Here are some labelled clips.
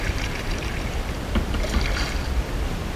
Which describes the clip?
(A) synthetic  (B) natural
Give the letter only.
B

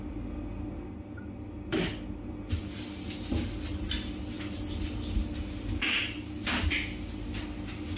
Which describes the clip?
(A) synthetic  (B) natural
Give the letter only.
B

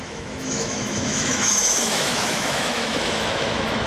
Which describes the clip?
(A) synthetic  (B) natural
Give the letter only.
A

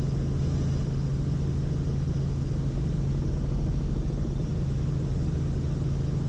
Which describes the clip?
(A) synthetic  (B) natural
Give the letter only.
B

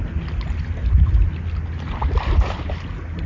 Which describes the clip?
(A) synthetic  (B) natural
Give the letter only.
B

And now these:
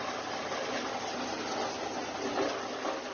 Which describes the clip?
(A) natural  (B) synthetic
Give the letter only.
A